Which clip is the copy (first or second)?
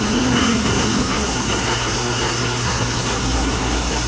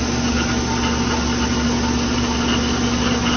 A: first